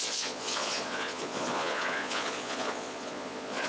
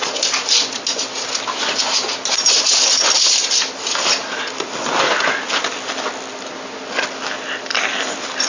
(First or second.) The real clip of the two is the second